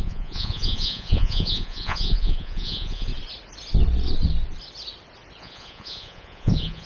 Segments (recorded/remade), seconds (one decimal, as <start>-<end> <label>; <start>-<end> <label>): 0.0-3.1 remade; 3.1-5.4 recorded; 5.4-6.9 remade